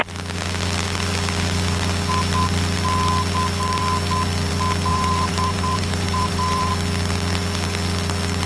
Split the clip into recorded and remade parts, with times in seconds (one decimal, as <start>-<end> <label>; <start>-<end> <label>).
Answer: 0.0-4.9 recorded; 4.9-6.7 remade; 6.7-8.5 recorded